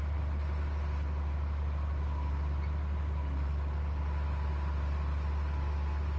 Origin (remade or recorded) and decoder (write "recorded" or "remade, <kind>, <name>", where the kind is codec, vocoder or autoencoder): recorded